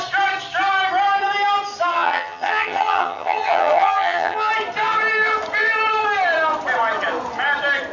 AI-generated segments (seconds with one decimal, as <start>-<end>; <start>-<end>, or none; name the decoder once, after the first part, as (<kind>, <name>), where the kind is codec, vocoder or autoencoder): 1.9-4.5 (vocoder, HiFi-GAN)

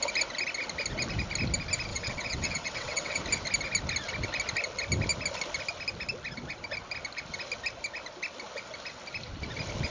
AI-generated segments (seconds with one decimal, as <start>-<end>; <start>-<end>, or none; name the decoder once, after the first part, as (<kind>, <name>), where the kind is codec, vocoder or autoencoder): 1.9-3.2 (vocoder, WaveNeXt)

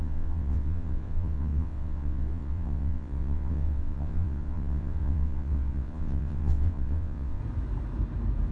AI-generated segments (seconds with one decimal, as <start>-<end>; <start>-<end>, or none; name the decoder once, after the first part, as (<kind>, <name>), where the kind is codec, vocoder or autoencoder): 0.0-7.4 (vocoder, WaveNeXt)

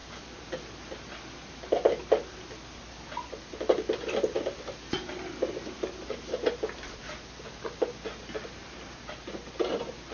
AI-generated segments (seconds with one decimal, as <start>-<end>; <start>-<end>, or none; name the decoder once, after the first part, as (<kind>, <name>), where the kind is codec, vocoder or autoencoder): none